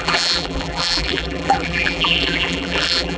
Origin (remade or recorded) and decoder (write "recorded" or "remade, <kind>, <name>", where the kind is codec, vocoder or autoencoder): remade, vocoder, BigVGAN v2